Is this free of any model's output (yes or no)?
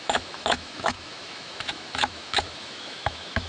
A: no